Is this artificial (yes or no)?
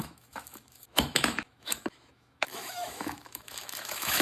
yes